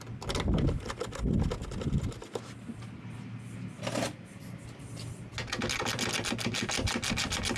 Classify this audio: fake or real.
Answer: real